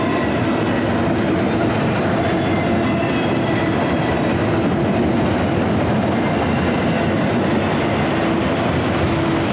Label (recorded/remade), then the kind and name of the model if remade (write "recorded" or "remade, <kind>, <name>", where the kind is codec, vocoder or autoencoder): recorded